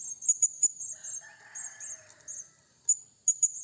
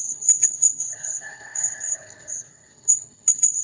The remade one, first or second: second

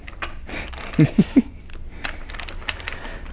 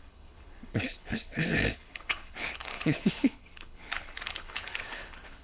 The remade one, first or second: second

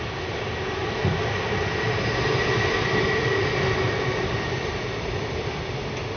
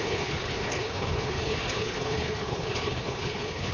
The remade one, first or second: second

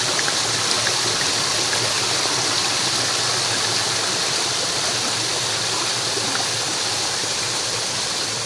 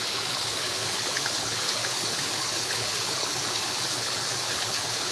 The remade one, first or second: second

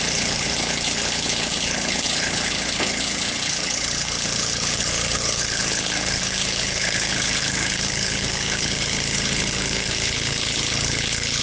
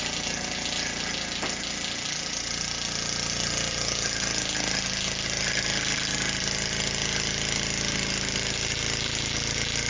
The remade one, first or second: first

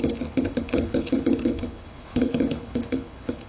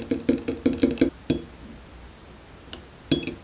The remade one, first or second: first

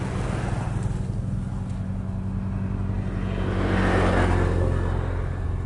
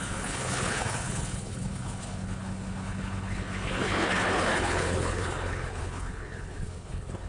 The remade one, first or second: second